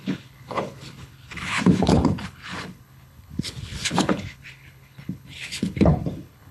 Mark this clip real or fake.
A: fake